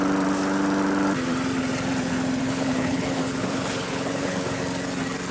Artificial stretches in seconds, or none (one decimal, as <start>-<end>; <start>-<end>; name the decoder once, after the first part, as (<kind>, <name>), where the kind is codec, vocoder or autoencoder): 2.4-4.6 (codec, HILCodec)